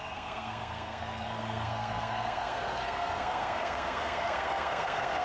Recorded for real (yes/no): no